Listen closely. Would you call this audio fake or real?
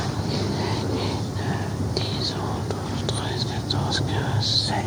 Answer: real